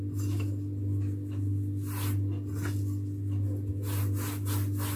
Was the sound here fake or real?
real